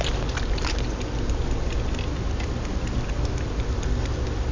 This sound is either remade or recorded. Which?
recorded